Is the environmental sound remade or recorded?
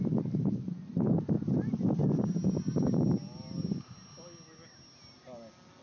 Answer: recorded